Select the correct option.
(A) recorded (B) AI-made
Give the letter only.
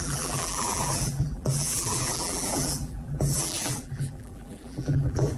B